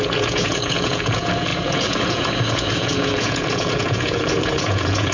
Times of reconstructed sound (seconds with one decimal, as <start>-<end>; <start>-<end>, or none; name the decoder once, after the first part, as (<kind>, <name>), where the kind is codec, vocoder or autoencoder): 0.0-5.1 (vocoder, Vocos)